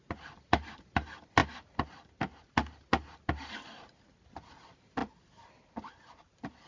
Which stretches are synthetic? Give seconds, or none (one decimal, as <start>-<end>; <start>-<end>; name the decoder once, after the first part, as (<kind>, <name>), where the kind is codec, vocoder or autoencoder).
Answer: none